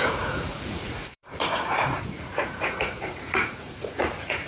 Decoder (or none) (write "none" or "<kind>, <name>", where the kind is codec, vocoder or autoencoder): vocoder, Vocos